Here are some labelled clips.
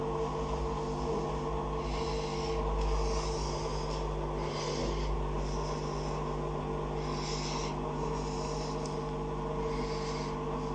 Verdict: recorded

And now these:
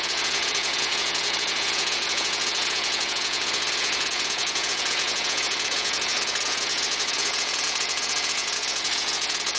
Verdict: remade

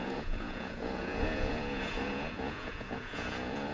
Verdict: remade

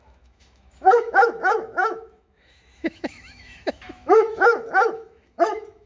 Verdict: remade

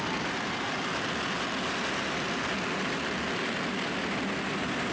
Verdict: recorded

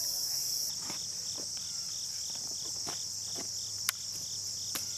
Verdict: recorded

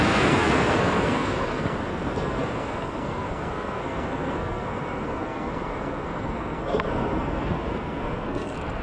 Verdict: remade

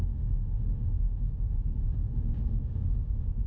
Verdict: remade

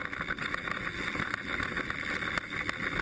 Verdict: recorded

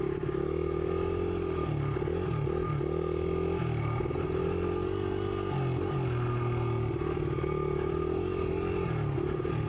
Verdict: recorded